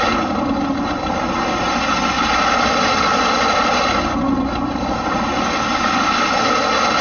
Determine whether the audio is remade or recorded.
recorded